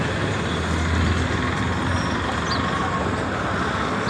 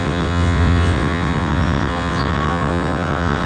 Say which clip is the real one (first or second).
first